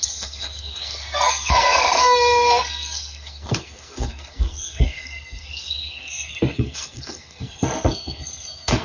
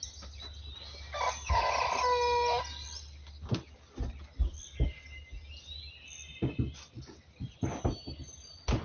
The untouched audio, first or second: second